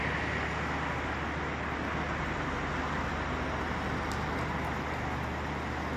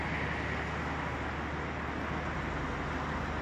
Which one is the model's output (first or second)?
first